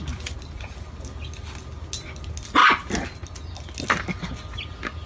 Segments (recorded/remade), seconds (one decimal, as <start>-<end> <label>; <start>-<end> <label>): 0.0-5.1 recorded